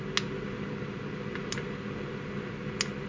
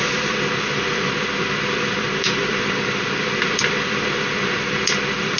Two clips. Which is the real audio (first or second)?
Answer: first